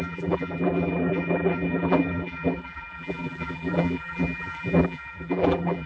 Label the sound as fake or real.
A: fake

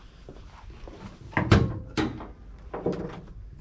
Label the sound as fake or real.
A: real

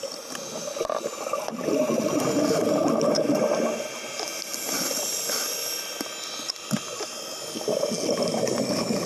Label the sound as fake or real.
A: real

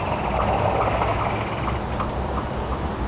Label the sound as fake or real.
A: real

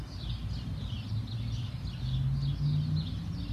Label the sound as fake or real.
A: real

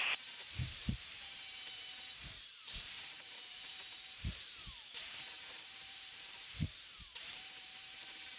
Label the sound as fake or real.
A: fake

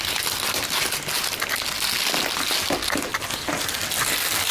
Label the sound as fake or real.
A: real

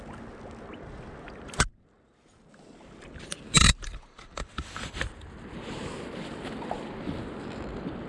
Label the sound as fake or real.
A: real